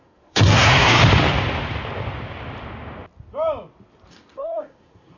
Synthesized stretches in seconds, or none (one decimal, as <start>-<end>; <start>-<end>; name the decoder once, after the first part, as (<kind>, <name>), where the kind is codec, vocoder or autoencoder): 0.0-1.0 (codec, SNAC); 4.1-5.2